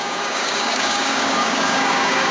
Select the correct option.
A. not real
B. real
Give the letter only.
A